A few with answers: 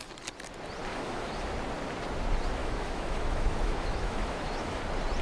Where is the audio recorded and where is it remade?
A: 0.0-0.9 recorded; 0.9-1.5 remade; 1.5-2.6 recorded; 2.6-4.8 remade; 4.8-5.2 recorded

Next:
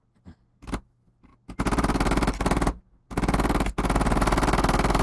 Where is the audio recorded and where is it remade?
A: 0.0-5.0 recorded

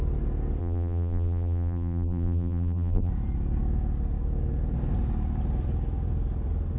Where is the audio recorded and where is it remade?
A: 0.0-0.6 recorded; 0.6-3.1 remade; 3.1-6.8 recorded

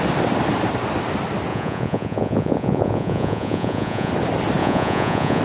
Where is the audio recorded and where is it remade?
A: 0.0-1.5 recorded; 1.5-4.1 remade; 4.1-4.6 recorded; 4.6-5.4 remade